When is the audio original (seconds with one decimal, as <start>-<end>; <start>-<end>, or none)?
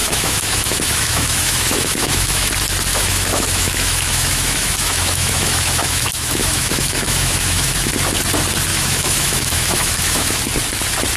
2.5-2.9; 7.9-8.7; 10.4-11.2